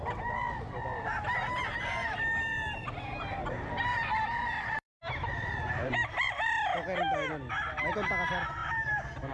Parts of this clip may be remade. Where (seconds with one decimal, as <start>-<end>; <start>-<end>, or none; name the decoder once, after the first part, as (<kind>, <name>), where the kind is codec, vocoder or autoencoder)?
3.9-6.5 (vocoder, BigVGAN v2); 8.6-9.3